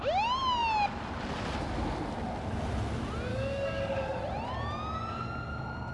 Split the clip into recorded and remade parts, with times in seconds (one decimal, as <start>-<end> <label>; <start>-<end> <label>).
0.0-3.3 recorded; 3.3-4.2 remade; 4.2-5.9 recorded